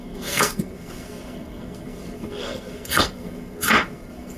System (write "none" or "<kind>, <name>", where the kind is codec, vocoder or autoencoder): codec, SNAC